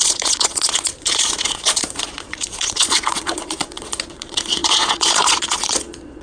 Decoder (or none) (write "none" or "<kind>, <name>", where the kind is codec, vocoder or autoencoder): vocoder, Vocos